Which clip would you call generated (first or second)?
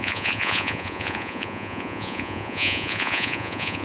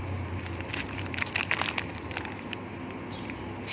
first